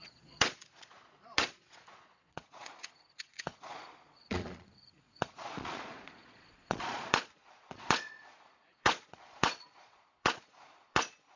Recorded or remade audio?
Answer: remade